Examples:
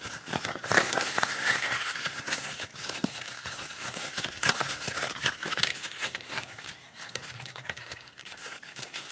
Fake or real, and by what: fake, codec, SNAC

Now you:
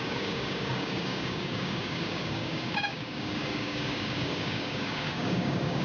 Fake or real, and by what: fake, codec, DAC